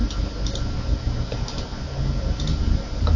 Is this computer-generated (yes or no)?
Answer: no